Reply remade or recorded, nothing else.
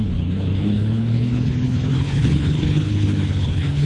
remade